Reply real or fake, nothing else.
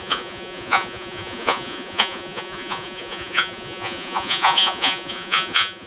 fake